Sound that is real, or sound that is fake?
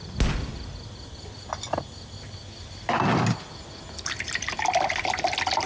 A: real